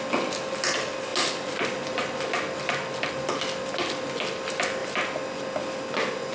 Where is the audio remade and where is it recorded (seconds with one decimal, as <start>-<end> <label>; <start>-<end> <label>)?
0.0-6.3 recorded